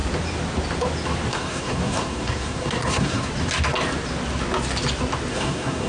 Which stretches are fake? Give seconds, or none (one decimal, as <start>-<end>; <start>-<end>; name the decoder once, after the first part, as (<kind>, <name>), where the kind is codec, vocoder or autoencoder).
1.3-3.3 (codec, SNAC); 5.3-5.9